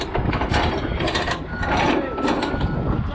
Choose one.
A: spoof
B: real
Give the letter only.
B